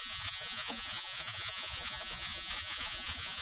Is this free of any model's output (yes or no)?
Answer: no